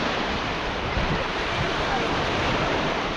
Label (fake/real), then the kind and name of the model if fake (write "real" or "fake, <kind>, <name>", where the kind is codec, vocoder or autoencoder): fake, vocoder, BigVGAN v2